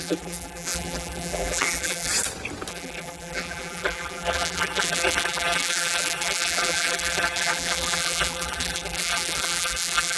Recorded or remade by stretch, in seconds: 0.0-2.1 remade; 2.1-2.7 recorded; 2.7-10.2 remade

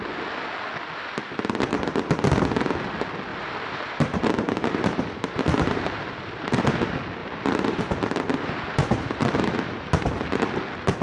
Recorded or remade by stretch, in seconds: 0.0-3.3 recorded; 3.3-6.6 remade; 6.6-7.2 recorded; 7.2-7.8 remade; 7.8-8.8 recorded; 8.8-10.0 remade; 10.0-11.0 recorded

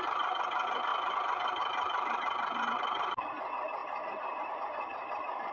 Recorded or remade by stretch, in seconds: 0.0-0.9 remade; 0.9-1.6 recorded; 1.6-5.5 remade

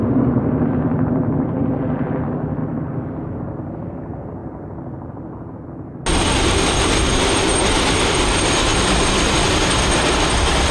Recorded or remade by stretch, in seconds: 0.0-4.4 remade; 4.4-7.3 recorded; 7.3-8.7 remade; 8.7-9.2 recorded; 9.2-10.7 remade

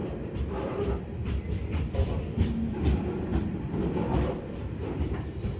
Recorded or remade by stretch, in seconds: 0.0-3.3 remade; 3.3-4.1 recorded; 4.1-5.6 remade

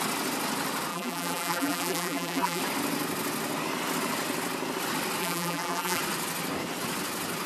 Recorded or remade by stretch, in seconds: 0.0-0.9 recorded; 0.9-2.6 remade; 2.6-5.2 recorded; 5.2-6.0 remade; 6.0-7.5 recorded

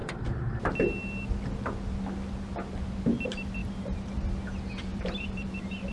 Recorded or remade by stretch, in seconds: 0.0-0.5 remade; 0.5-3.6 recorded; 3.6-4.3 remade; 4.3-4.9 recorded; 4.9-5.9 remade

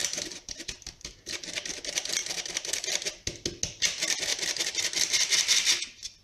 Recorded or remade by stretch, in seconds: 0.0-1.4 remade; 1.4-2.2 recorded; 2.2-2.9 remade; 2.9-6.2 recorded